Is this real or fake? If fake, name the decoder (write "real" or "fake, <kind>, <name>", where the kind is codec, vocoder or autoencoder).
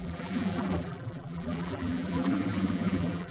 fake, vocoder, BigVGAN v2